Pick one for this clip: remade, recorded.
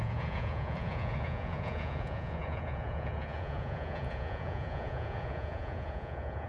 remade